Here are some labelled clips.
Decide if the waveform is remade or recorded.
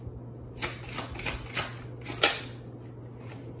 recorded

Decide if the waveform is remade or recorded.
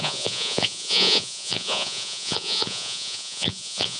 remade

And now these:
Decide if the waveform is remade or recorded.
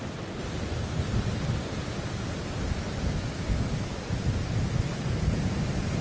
recorded